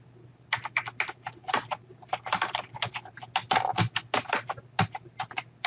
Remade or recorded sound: recorded